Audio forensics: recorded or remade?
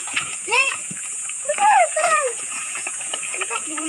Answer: remade